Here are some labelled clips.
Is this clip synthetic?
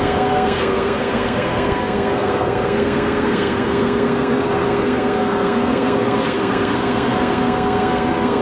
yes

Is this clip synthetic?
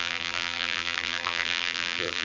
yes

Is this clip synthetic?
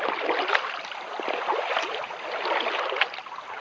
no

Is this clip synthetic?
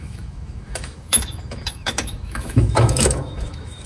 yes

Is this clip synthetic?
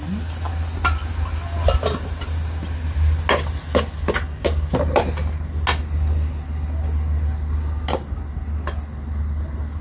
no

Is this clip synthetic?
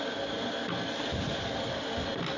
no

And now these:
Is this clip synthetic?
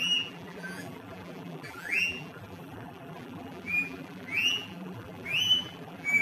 yes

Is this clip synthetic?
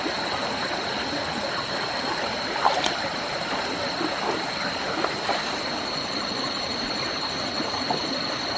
no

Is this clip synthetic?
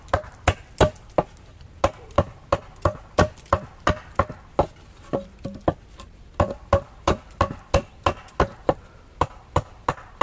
no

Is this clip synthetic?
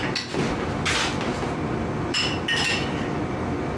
no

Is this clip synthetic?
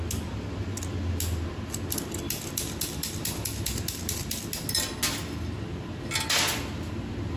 no